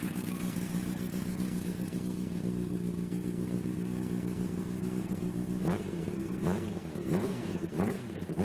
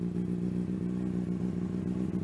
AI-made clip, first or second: first